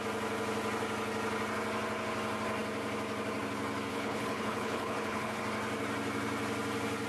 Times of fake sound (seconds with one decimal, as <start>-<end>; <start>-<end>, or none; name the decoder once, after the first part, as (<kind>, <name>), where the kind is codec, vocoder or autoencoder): 3.9-5.4 (codec, HILCodec)